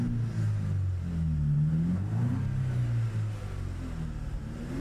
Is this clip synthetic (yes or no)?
no